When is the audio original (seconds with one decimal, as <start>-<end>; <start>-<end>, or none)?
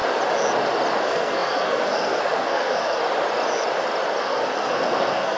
0.0-1.0; 3.0-4.2